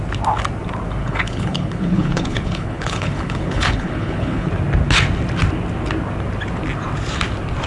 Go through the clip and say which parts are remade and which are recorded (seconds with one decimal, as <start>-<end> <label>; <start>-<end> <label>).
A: 0.0-1.0 recorded; 1.0-4.5 remade; 4.5-7.7 recorded